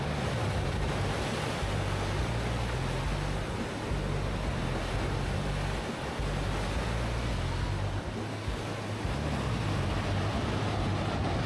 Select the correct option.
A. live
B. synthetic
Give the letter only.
A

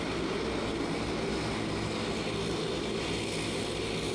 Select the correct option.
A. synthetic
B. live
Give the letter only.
B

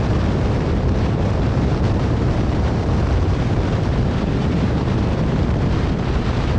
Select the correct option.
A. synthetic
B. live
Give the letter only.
A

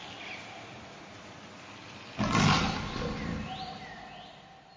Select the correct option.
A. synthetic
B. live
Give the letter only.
B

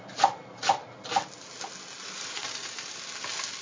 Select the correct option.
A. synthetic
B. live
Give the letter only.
B